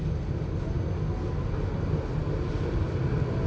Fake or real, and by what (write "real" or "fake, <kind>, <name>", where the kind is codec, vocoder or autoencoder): real